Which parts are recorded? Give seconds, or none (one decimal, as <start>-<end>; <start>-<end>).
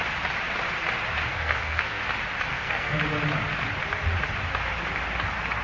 0.0-1.3; 2.0-2.5; 3.0-5.6